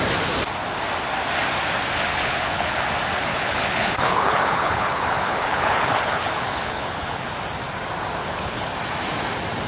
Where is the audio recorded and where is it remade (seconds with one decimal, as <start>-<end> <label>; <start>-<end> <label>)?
0.0-2.1 recorded; 2.1-2.9 remade; 2.9-3.3 recorded; 3.3-7.3 remade; 7.3-8.2 recorded; 8.2-8.7 remade; 8.7-9.7 recorded